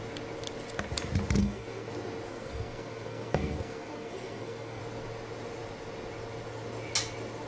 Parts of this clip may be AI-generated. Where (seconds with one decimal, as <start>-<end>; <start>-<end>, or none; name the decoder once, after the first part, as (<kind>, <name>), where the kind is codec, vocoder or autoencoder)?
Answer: 1.4-1.9 (codec, SNAC); 2.3-4.8